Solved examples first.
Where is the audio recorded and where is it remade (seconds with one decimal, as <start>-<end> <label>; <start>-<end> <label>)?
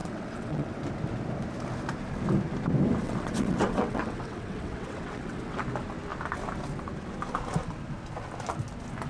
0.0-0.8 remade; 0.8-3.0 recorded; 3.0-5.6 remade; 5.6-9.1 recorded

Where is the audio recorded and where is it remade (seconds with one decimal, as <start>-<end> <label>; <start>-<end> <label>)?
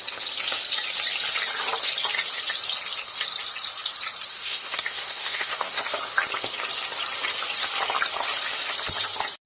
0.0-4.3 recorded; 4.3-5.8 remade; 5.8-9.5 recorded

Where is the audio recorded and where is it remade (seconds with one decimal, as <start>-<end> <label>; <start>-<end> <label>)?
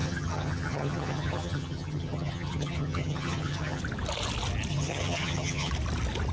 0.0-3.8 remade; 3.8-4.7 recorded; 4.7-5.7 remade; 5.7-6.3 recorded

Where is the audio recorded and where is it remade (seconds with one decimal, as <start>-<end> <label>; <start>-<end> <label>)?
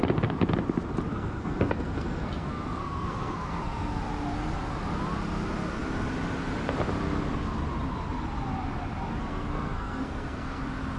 0.0-1.1 recorded; 1.1-4.0 remade; 4.0-9.2 recorded; 9.2-10.6 remade; 10.6-11.0 recorded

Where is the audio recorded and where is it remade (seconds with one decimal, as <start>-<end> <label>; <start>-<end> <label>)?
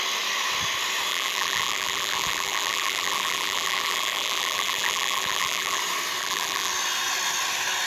0.0-1.1 recorded; 1.1-5.8 remade; 5.8-6.2 recorded; 6.2-6.7 remade; 6.7-7.9 recorded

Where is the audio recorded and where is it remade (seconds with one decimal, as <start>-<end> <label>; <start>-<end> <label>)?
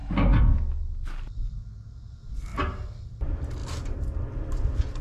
0.0-5.0 recorded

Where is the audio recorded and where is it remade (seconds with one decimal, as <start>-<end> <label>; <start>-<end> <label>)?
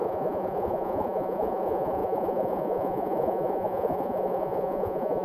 0.0-5.2 remade